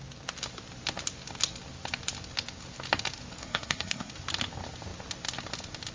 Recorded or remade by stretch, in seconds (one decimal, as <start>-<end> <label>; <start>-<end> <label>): 0.0-3.4 recorded; 3.4-4.1 remade; 4.1-5.9 recorded